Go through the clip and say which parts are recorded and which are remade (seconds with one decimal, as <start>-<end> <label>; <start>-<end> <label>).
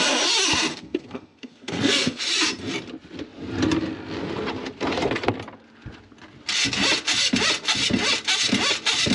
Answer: 0.0-0.7 recorded; 0.7-2.2 remade; 2.2-9.1 recorded